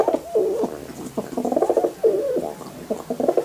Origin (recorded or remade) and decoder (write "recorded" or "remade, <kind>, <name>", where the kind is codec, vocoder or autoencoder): recorded